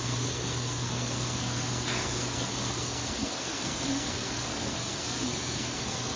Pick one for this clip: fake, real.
fake